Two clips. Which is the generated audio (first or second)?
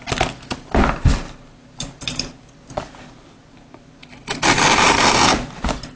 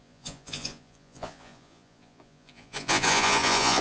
second